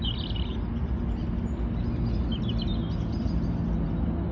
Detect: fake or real real